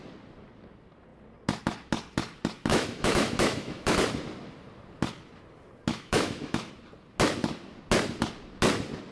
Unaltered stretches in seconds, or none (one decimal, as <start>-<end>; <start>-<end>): 0.0-2.7; 4.0-5.9; 6.7-9.1